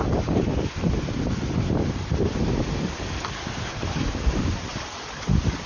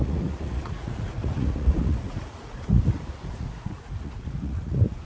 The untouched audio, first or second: first